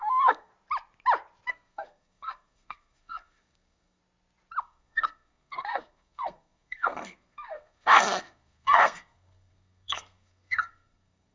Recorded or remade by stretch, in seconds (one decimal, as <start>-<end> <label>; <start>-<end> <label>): 0.0-0.5 remade; 0.5-1.5 recorded; 1.5-4.0 remade; 4.0-4.6 recorded; 4.6-11.3 remade